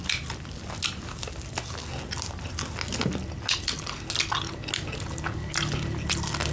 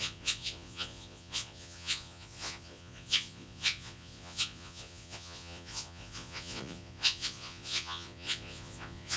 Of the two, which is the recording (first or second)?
first